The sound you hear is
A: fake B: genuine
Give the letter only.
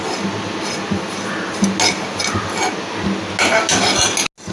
B